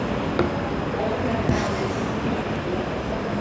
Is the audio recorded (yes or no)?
yes